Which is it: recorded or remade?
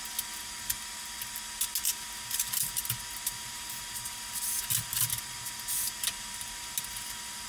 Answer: recorded